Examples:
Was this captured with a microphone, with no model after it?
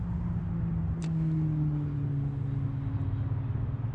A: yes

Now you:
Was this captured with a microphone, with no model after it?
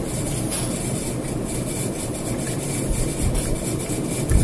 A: no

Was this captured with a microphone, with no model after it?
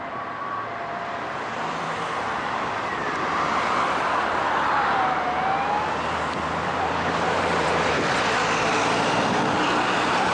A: no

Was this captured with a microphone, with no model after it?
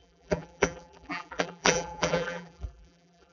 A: no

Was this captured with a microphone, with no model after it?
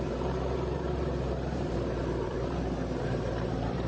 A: no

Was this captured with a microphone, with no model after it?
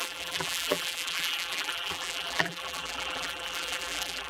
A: no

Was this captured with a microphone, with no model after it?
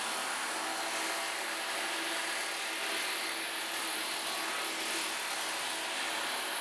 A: yes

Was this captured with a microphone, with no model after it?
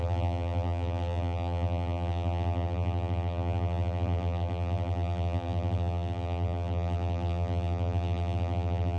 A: no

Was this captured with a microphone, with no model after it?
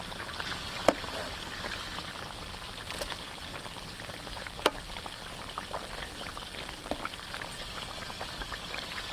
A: yes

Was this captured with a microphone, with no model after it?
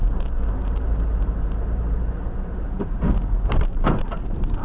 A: no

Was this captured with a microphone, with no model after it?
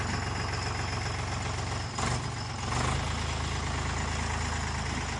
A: yes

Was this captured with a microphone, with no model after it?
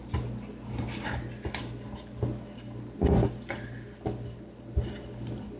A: no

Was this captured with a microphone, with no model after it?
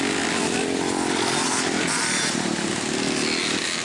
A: yes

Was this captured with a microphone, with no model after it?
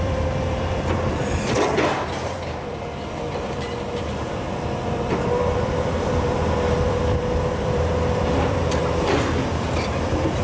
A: no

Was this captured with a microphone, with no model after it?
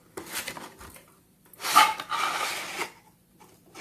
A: no